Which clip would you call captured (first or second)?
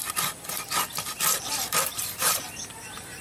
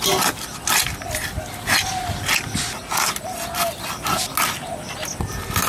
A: second